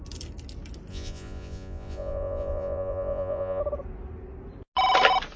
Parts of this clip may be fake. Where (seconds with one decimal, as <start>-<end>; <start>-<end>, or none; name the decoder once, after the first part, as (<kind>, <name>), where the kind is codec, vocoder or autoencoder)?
0.9-3.6 (vocoder, Vocos)